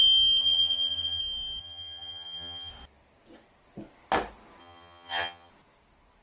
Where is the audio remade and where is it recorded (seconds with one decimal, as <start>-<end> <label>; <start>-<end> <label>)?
0.0-0.4 recorded; 0.4-1.2 remade; 1.2-1.6 recorded; 1.6-2.7 remade; 2.7-4.6 recorded; 4.6-5.5 remade; 5.5-6.2 recorded